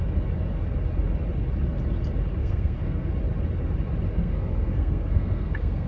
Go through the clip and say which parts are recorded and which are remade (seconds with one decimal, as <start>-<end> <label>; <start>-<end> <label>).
0.0-2.4 recorded; 2.4-3.1 remade; 3.1-4.2 recorded; 4.2-5.9 remade